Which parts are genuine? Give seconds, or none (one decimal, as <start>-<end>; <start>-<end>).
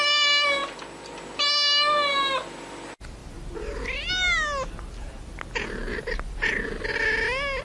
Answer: 0.0-7.6